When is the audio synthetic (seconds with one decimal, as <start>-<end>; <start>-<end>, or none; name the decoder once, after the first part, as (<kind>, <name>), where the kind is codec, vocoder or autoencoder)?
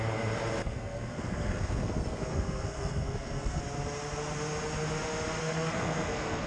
0.6-3.6 (codec, SNAC); 5.4-6.5